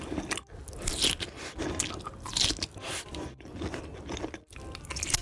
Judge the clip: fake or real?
real